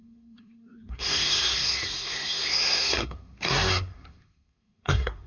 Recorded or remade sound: remade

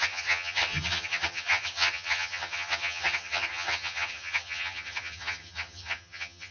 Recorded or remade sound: remade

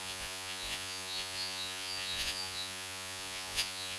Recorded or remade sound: remade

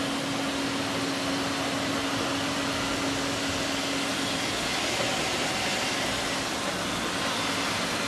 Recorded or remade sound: recorded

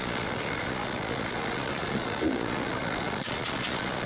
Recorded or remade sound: remade